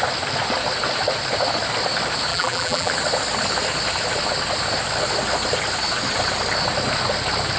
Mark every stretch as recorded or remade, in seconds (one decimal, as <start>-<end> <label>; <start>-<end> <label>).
0.0-2.3 recorded; 2.3-2.9 remade; 2.9-7.6 recorded